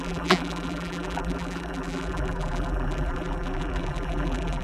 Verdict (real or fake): fake